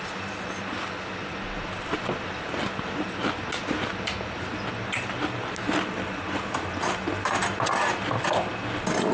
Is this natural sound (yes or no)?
yes